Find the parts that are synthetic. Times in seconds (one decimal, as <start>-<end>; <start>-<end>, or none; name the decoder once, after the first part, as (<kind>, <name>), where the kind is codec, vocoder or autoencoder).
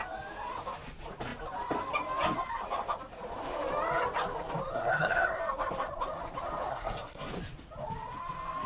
4.7-5.4 (codec, SNAC); 6.7-7.3